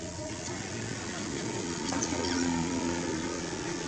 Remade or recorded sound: remade